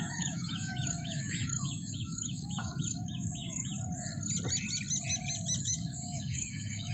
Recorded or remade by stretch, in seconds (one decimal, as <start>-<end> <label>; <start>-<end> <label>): 0.0-3.7 remade; 3.7-5.6 recorded; 5.6-6.9 remade